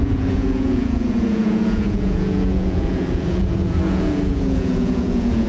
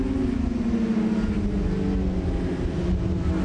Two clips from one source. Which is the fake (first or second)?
first